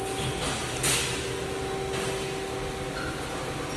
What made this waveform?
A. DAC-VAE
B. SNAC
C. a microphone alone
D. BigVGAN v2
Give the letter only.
C